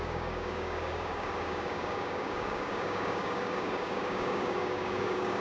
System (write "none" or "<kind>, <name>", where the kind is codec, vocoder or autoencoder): codec, DAC